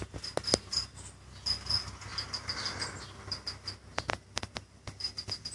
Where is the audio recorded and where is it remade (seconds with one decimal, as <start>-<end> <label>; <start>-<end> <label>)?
0.0-5.5 recorded